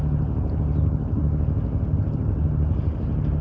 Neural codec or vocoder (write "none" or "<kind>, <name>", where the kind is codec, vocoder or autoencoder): none